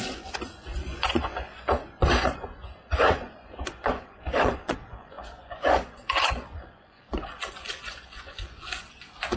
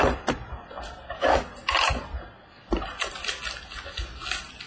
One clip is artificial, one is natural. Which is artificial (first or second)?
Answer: first